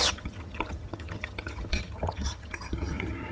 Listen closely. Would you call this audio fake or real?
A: fake